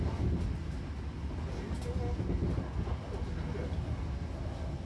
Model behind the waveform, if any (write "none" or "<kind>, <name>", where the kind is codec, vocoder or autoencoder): none